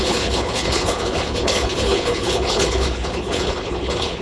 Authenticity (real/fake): fake